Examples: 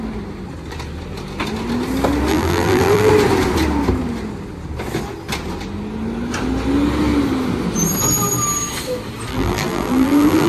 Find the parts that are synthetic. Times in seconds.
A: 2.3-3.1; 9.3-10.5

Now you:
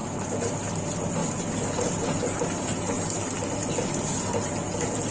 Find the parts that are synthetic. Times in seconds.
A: none

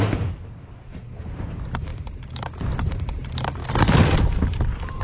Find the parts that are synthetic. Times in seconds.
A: 0.0-3.6; 4.2-5.0